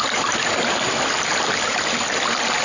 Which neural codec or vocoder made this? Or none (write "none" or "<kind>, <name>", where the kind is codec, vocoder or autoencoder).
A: vocoder, BigVGAN v2